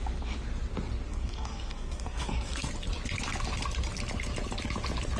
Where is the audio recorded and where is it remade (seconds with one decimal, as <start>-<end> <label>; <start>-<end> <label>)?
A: 0.0-1.1 recorded; 1.1-2.7 remade; 2.7-5.2 recorded